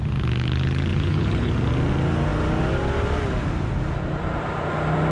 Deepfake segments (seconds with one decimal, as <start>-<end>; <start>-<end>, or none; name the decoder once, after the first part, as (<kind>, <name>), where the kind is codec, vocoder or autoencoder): 0.9-1.5 (codec, HILCodec)